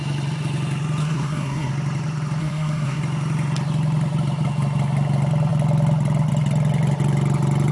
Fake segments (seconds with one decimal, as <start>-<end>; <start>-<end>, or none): 1.0-1.7; 2.4-3.0